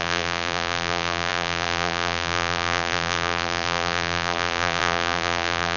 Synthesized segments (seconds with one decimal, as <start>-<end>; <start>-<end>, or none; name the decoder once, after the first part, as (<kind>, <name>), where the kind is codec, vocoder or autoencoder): 0.0-5.8 (vocoder, BigVGAN v2)

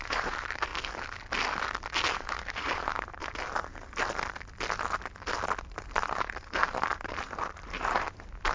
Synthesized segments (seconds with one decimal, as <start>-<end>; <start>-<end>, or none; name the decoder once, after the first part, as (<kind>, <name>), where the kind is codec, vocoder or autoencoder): 0.0-0.7 (vocoder, BigVGAN v2); 2.1-3.2; 5.6-8.5